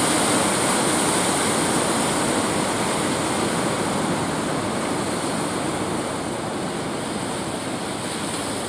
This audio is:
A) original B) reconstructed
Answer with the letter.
A